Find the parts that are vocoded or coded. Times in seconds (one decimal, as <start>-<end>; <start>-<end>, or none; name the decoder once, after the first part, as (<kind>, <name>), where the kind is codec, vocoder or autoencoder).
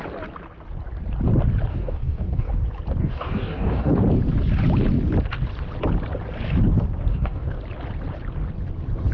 1.7-2.5 (codec, DAC); 3.0-3.9; 7.1-7.6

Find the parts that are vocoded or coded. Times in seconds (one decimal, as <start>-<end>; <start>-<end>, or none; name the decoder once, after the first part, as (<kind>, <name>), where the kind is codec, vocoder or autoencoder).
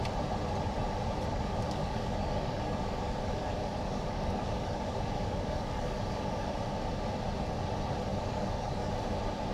1.3-6.6 (codec, DAC); 8.1-8.9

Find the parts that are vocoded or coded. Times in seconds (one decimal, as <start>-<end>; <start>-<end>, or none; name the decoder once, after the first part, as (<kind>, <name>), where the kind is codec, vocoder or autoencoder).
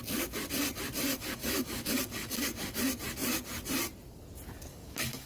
1.1-2.8 (codec, DAC); 4.7-5.3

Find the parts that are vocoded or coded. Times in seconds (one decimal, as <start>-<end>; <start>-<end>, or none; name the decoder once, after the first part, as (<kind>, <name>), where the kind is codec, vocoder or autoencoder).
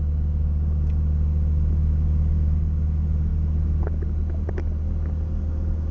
none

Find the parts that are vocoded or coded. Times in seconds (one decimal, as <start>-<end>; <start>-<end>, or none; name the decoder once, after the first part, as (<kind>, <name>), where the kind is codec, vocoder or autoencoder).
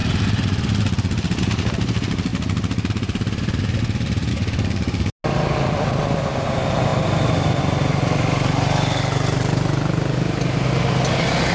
4.3-5.1 (codec, DAC)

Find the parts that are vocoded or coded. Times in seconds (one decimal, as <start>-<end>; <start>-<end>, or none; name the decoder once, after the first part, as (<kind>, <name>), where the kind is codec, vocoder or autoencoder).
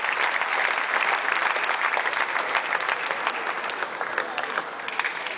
4.2-4.8 (codec, DAC)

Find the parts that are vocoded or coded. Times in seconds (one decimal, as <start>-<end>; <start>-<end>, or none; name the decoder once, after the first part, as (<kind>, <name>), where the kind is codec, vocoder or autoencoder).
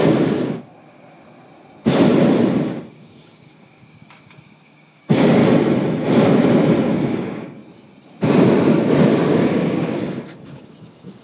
0.0-0.7 (codec, DAC); 2.9-5.4; 6.8-7.6; 9.0-11.2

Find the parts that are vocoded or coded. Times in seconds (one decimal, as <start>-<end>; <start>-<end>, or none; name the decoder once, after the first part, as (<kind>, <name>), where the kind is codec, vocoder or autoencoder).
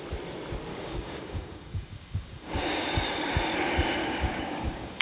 0.7-3.3 (codec, DAC); 4.0-5.0